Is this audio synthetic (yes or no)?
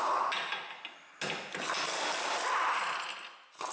no